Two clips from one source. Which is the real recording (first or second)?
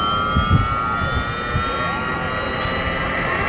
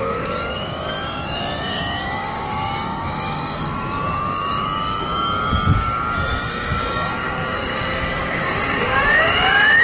first